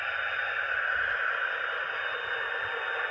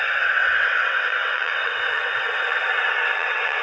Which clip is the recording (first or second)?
first